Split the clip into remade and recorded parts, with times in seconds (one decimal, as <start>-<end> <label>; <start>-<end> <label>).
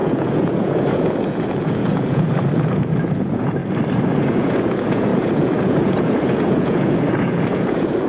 0.0-3.6 remade; 3.6-4.2 recorded; 4.2-8.1 remade